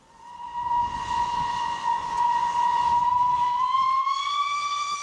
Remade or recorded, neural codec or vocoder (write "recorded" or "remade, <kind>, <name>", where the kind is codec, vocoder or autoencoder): remade, vocoder, Vocos